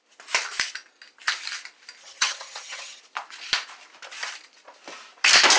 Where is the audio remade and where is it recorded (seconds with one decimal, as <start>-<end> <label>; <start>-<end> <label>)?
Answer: 0.0-2.0 recorded; 2.0-3.0 remade; 3.0-5.6 recorded